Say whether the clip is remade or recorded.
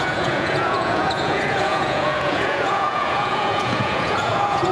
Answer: remade